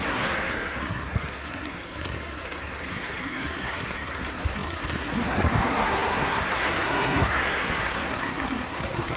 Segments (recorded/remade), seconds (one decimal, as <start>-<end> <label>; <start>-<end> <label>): 0.0-9.2 remade